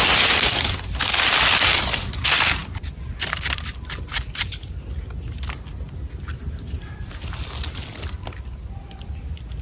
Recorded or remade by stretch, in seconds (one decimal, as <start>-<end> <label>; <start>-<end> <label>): 0.0-9.6 recorded